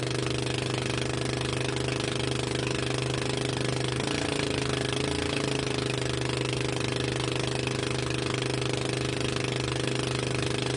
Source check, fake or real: real